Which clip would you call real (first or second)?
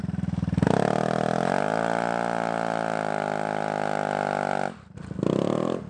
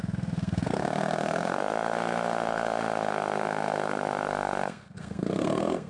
first